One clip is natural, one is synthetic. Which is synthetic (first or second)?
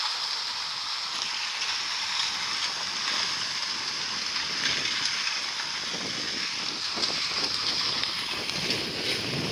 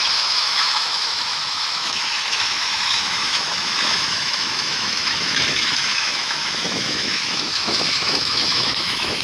second